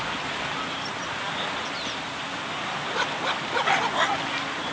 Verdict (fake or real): real